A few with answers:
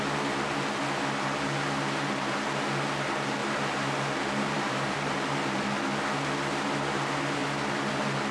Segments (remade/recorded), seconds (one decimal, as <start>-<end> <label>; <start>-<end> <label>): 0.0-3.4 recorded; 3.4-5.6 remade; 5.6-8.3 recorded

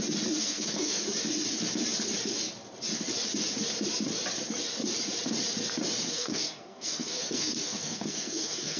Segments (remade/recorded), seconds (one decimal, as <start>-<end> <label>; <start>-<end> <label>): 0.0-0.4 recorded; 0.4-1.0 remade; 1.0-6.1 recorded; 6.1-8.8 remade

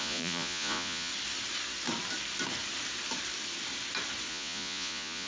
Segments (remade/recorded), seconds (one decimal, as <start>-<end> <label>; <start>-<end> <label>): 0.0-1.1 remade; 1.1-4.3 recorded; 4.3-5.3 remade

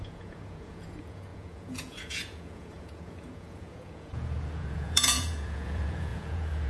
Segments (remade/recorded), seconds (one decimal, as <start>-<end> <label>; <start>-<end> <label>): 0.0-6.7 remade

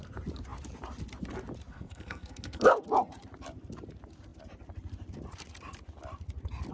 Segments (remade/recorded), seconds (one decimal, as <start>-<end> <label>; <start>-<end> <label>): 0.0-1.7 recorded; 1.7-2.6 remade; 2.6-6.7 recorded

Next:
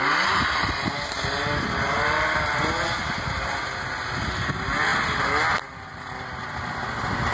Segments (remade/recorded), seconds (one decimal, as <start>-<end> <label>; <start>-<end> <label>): 0.0-7.3 recorded